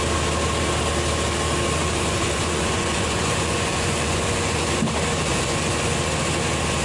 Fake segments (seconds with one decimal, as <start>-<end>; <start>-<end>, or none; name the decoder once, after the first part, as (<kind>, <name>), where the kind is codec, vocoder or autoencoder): 1.8-4.8 (vocoder, Vocos); 5.3-5.9